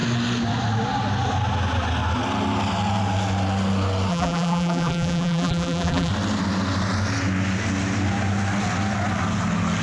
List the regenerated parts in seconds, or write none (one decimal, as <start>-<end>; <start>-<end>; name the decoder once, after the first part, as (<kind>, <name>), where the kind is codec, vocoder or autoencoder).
4.1-6.1 (vocoder, BigVGAN v2)